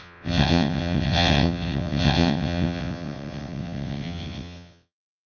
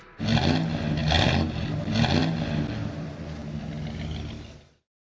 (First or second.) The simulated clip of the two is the first